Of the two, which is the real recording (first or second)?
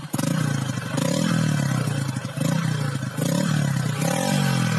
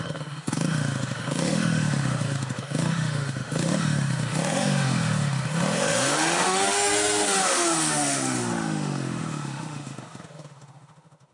first